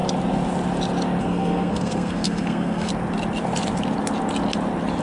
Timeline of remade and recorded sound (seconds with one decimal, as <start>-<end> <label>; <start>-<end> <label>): 0.0-1.2 recorded; 1.2-2.9 remade; 2.9-5.0 recorded